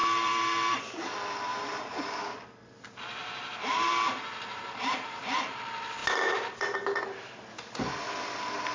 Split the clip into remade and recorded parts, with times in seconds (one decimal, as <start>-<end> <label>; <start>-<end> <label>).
0.0-0.8 remade; 0.8-1.5 recorded; 1.5-2.2 remade; 2.2-3.2 recorded; 3.2-5.2 remade; 5.2-8.7 recorded